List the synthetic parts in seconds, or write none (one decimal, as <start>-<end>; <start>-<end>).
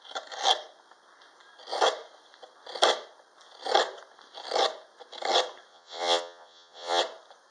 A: 5.7-7.0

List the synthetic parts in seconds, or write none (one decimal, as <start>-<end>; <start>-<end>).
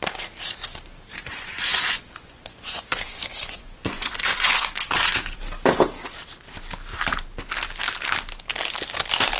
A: 1.1-5.1